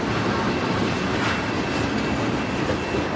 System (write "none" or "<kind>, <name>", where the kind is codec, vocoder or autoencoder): none